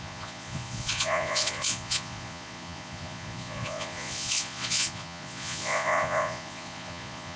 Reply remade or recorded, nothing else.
remade